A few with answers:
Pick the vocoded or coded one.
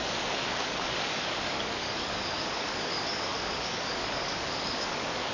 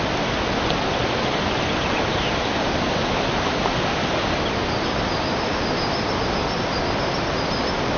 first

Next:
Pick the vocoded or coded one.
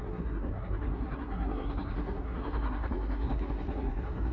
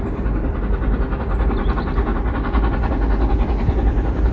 first